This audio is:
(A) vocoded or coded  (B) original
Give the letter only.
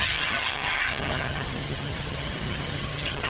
A